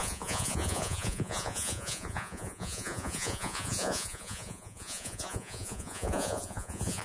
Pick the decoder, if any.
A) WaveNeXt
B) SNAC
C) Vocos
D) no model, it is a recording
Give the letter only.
C